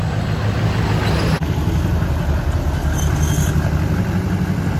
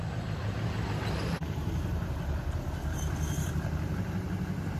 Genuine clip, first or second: first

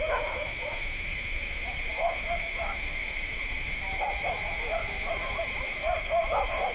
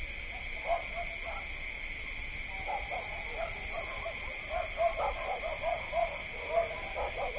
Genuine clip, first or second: second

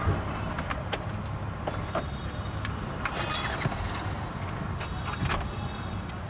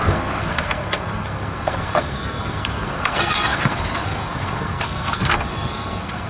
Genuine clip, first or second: first